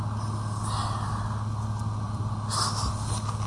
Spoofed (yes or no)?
no